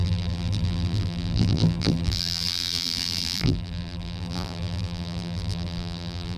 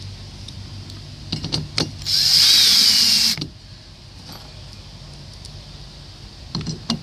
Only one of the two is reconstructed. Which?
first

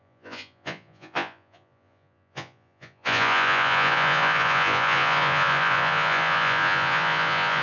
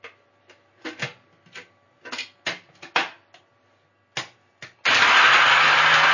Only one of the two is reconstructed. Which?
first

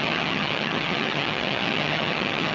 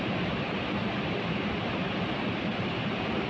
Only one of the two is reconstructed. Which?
first